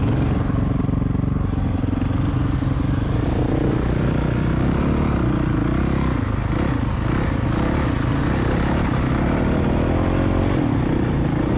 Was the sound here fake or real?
real